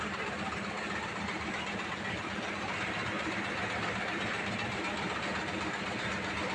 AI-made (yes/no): no